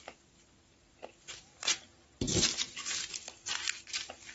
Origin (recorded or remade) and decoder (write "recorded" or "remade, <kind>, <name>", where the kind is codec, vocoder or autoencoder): recorded